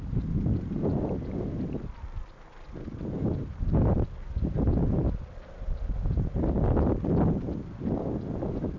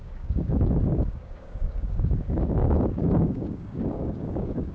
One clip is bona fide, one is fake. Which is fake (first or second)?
second